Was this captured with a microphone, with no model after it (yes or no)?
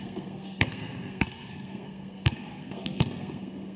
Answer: no